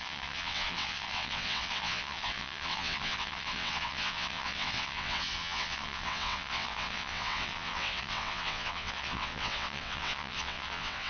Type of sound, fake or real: fake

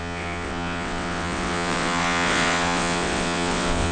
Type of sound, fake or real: fake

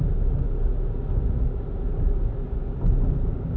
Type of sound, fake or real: real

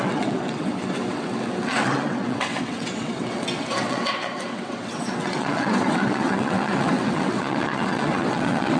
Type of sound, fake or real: fake